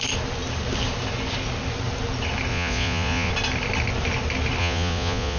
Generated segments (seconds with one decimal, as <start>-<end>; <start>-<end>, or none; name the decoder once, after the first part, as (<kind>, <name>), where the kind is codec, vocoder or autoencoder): 2.5-3.3 (vocoder, Vocos); 4.6-5.4